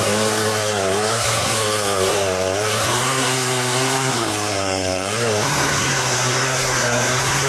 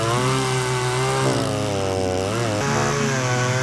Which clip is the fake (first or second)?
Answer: first